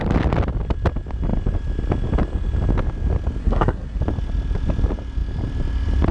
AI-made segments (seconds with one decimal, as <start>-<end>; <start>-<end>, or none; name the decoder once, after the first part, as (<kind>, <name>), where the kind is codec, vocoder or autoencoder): 3.4-4.0 (codec, SNAC)